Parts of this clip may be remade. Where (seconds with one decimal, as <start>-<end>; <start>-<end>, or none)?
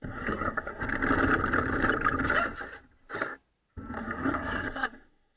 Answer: 0.0-0.8; 4.0-5.4